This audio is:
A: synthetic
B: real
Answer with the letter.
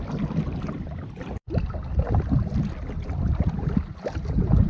B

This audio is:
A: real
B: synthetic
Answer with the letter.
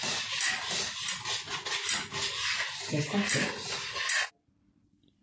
A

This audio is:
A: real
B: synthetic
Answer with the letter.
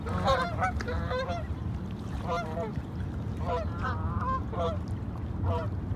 A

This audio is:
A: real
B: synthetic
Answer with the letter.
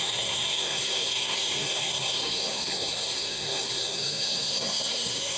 B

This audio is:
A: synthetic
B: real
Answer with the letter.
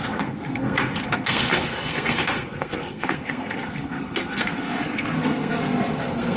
A